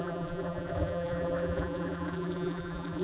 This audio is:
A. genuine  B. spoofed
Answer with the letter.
B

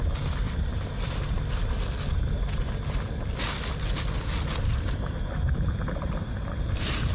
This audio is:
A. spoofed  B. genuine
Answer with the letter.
B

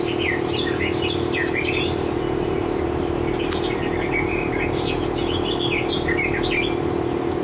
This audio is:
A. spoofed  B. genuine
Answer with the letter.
B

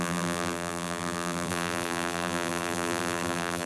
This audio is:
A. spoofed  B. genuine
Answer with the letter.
A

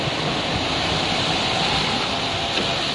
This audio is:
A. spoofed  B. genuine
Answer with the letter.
B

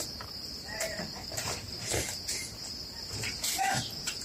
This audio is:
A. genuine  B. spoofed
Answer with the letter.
B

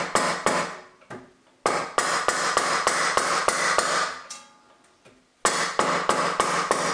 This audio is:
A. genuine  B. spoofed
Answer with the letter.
A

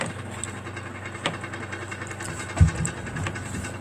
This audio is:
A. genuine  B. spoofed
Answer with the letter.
A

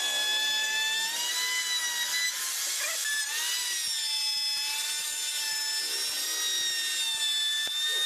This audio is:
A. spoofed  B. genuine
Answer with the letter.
B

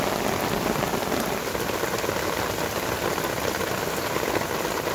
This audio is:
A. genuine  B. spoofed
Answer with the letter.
A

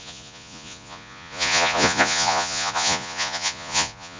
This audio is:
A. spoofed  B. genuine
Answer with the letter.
A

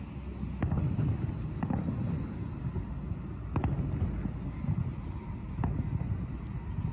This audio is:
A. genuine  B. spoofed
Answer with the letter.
A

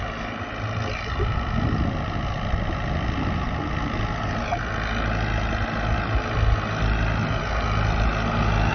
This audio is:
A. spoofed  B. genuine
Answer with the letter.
B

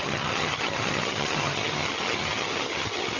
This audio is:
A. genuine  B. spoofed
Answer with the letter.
B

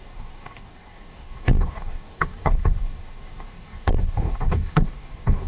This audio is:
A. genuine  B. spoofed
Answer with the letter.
B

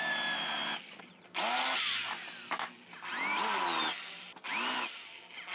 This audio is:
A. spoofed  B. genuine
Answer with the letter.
B